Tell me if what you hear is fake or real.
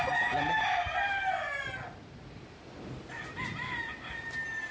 real